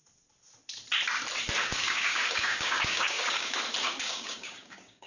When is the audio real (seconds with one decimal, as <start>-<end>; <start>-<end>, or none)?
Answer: 0.0-1.7; 3.6-4.0